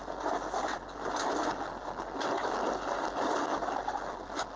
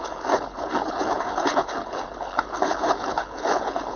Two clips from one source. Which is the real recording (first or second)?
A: first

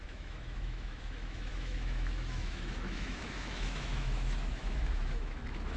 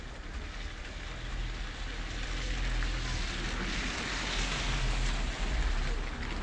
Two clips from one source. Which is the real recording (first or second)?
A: second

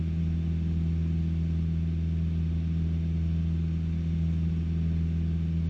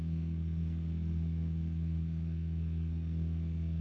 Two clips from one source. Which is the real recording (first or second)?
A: first